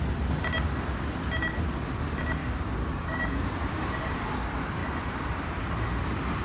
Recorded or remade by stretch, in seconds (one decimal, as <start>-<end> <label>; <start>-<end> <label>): 0.0-2.4 recorded; 2.4-3.9 remade; 3.9-6.4 recorded